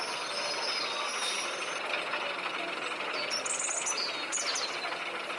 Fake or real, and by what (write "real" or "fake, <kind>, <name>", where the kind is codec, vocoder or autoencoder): real